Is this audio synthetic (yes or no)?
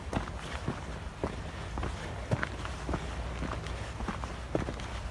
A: no